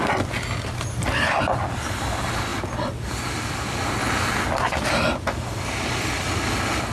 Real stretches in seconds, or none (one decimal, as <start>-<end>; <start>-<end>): 0.0-6.9